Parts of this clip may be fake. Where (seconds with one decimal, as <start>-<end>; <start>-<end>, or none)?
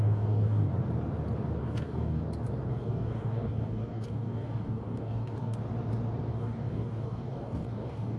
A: 0.0-0.7; 1.6-2.2; 2.7-5.6; 6.3-8.2